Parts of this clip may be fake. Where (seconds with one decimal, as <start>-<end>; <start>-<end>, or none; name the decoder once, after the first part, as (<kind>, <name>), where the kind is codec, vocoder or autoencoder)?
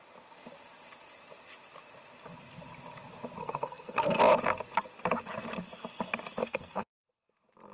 3.4-4.2 (codec, SNAC); 6.4-7.3